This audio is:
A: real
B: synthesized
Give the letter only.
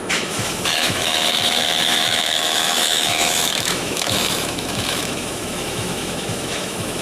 B